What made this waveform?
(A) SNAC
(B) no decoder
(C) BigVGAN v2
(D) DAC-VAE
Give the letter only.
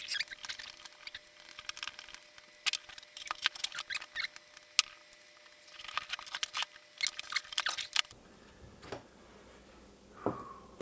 B